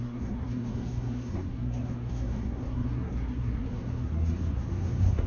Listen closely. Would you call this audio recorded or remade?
remade